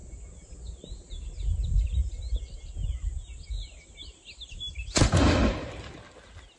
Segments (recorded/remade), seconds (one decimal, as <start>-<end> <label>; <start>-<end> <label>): 0.0-2.3 remade; 2.3-2.8 recorded; 2.8-5.1 remade; 5.1-6.6 recorded